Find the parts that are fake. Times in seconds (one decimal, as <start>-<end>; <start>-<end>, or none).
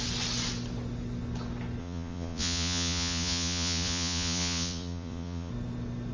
1.8-5.5